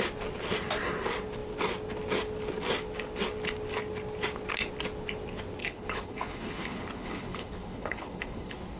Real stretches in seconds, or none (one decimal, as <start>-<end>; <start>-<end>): 0.0-5.6